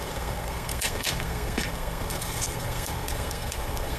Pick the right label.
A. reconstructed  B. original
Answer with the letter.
A